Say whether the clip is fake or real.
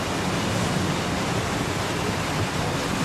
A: real